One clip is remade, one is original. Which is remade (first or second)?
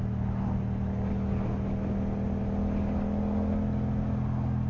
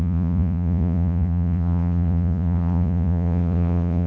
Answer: second